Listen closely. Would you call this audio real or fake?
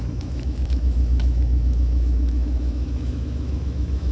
fake